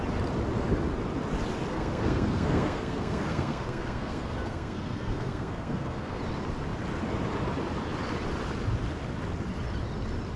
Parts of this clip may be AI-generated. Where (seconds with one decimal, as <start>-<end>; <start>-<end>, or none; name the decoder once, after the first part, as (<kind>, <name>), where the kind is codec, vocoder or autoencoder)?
1.7-6.2 (codec, SNAC)